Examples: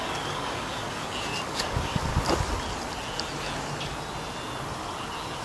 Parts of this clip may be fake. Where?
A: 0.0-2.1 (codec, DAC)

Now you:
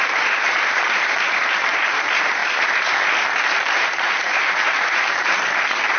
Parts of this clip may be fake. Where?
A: 0.0-2.4 (vocoder, BigVGAN v2); 3.6-6.0

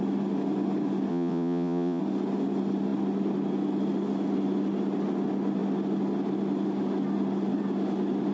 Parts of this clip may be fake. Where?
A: 1.1-2.0 (vocoder, Vocos)

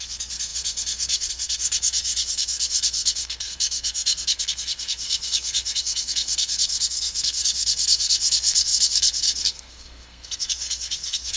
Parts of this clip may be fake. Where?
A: 0.0-11.4 (codec, SNAC)

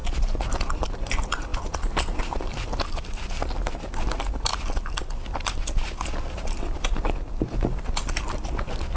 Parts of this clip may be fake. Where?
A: none

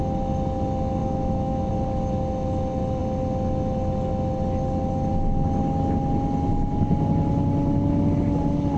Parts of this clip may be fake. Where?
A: 1.0-1.7 (autoencoder, DAC-VAE)

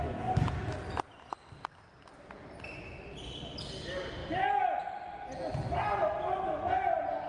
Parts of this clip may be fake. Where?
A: none

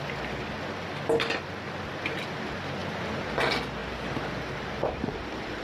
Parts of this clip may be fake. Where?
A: 3.8-5.6 (vocoder, BigVGAN v2)